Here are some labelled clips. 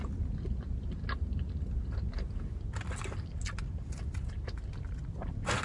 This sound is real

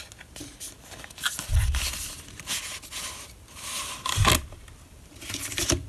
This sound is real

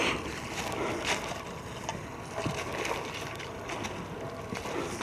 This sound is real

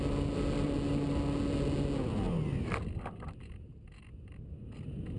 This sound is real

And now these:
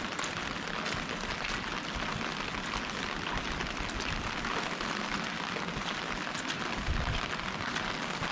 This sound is real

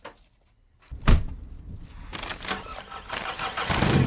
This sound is real